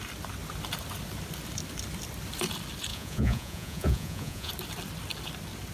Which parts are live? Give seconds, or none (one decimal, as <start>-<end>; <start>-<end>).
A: 0.0-2.9; 4.5-5.7